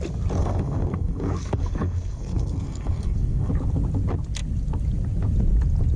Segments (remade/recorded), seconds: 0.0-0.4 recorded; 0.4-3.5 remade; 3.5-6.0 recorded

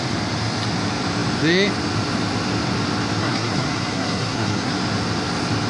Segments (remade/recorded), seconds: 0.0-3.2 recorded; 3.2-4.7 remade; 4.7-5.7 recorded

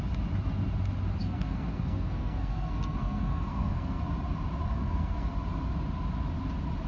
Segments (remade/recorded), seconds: 0.0-1.2 recorded; 1.2-4.0 remade; 4.0-4.7 recorded; 4.7-5.3 remade; 5.3-6.9 recorded

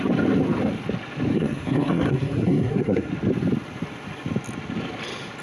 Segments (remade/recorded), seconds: 0.0-1.3 recorded; 1.3-3.1 remade; 3.1-5.4 recorded

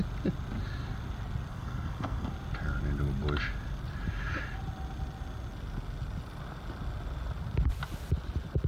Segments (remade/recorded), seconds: 0.0-1.5 recorded; 1.5-2.3 remade; 2.3-8.7 recorded

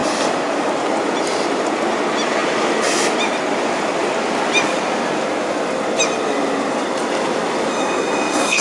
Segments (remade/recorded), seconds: 0.0-7.7 recorded; 7.7-8.6 remade

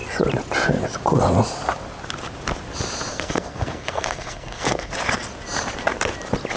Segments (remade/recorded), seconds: 0.0-3.1 recorded; 3.1-4.9 remade; 4.9-6.6 recorded